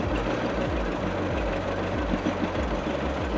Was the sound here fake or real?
real